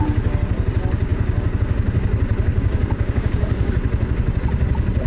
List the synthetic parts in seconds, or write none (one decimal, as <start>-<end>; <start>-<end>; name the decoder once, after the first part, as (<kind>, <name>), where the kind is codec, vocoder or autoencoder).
2.5-3.7 (codec, DAC)